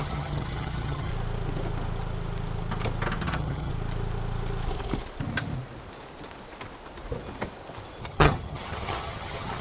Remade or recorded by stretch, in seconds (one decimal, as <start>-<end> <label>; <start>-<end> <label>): 0.0-1.1 remade; 1.1-3.2 recorded; 3.2-3.7 remade; 3.7-8.0 recorded; 8.0-9.6 remade